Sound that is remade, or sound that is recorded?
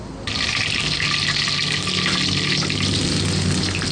recorded